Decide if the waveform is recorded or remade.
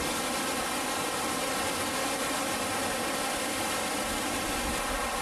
recorded